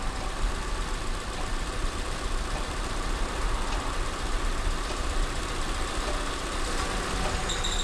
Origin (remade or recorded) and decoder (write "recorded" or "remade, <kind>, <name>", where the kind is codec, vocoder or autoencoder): recorded